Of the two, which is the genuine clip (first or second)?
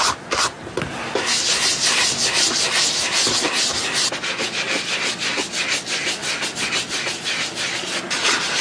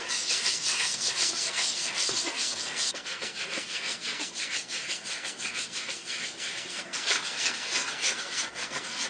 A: first